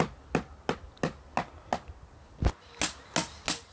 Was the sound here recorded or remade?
recorded